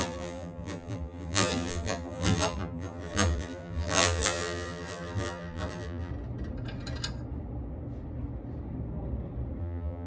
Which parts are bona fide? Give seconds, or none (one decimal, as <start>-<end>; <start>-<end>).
6.1-9.6

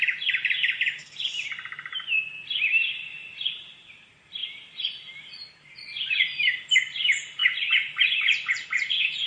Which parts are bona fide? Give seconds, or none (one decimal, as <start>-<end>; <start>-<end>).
1.0-2.6